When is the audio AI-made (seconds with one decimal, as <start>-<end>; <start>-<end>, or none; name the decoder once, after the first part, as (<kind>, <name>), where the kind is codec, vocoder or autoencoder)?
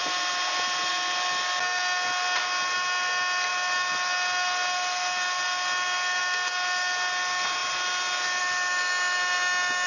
0.0-0.9 (vocoder, BigVGAN v2)